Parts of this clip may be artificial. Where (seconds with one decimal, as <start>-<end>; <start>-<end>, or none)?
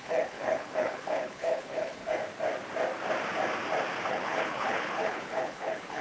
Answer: 0.0-2.0; 4.1-6.0